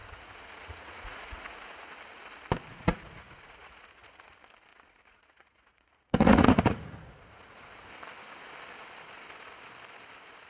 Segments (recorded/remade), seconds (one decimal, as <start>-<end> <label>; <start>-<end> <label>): 0.0-1.9 remade; 1.9-2.7 recorded; 2.7-4.3 remade; 4.3-4.7 recorded; 4.7-7.9 remade; 7.9-10.5 recorded